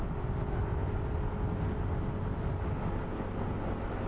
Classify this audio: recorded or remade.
recorded